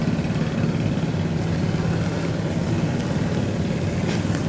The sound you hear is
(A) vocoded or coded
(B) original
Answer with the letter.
B